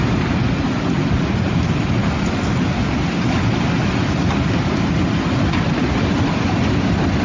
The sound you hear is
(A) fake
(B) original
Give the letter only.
B